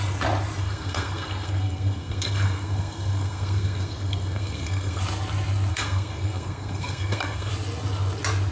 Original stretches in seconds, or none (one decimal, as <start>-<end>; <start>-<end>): 0.0-0.6; 5.0-5.7; 7.5-8.5